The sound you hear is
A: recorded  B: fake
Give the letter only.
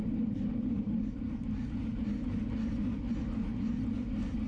A